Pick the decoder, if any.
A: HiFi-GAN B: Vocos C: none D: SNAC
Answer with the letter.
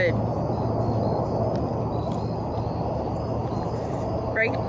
C